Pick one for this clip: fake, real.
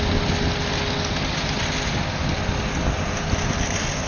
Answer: real